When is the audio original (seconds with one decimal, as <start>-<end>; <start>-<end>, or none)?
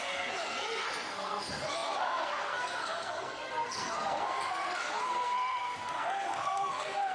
none